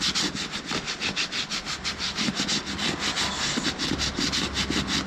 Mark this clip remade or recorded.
recorded